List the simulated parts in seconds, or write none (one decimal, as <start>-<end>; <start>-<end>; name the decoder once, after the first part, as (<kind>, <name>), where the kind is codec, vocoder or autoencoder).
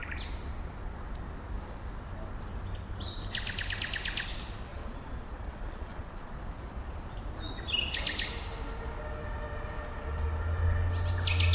4.7-6.3 (vocoder, Vocos)